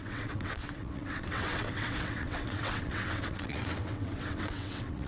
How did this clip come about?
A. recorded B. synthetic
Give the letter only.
B